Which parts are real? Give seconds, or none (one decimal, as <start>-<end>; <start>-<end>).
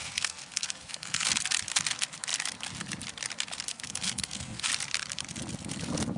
1.3-3.7; 4.7-6.2